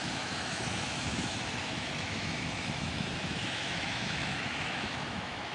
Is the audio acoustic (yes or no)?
no